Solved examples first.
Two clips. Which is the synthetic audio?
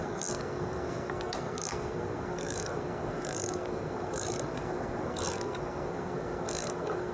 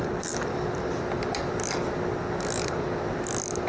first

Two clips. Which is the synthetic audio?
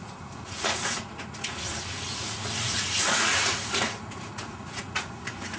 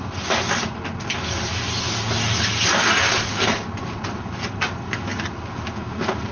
first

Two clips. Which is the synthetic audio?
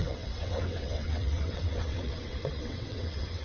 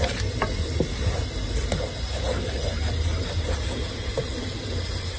first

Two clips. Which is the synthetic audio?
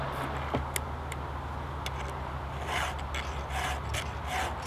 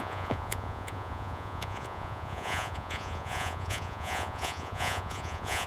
second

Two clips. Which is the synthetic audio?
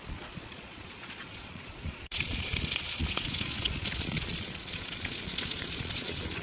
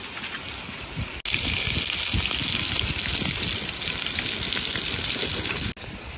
first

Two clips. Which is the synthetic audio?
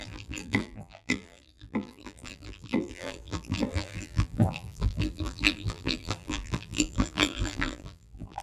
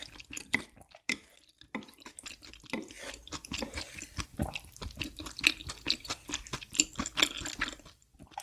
first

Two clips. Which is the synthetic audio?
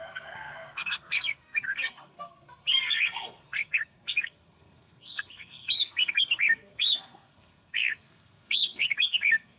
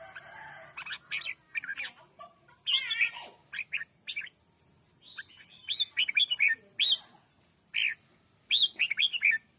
first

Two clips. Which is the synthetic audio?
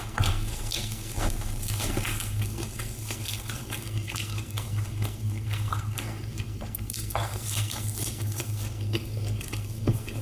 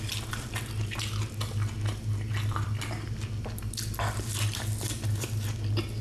first